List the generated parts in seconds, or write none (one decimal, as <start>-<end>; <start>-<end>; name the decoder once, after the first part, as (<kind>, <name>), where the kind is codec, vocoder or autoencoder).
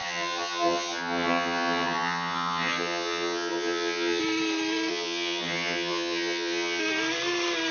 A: 0.0-4.2 (vocoder, HiFi-GAN); 4.9-6.8